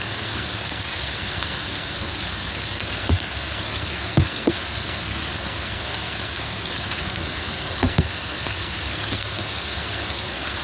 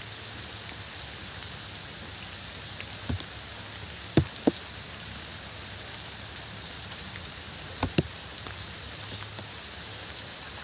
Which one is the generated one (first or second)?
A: first